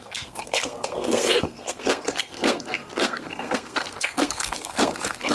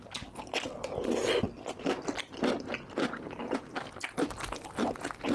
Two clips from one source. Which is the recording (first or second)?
second